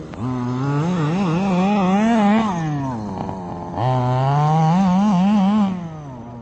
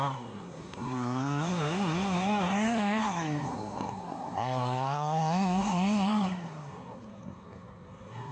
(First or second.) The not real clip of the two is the second